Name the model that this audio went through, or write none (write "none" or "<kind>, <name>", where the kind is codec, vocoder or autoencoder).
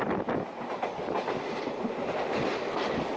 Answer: none